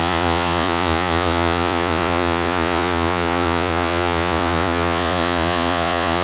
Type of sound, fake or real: fake